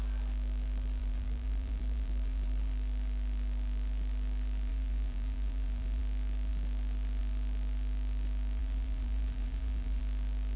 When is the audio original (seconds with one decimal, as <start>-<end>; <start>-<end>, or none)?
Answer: 0.0-1.0; 2.7-4.7; 6.0-8.6; 10.0-10.6